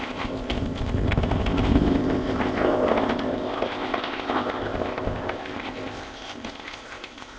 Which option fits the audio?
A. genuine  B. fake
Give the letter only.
B